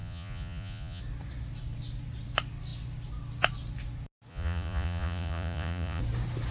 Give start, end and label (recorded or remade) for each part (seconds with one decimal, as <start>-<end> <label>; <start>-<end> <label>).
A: 0.0-1.0 remade; 1.0-4.3 recorded; 4.3-6.0 remade; 6.0-6.5 recorded